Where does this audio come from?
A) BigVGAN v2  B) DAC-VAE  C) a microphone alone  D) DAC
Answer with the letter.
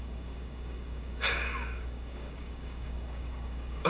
D